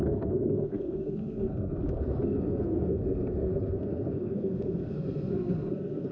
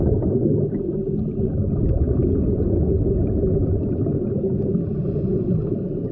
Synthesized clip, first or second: first